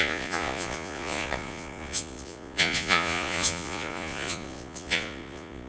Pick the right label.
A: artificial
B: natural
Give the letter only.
A